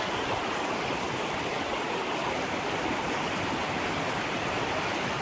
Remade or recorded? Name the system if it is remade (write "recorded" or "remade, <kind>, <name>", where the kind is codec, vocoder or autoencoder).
recorded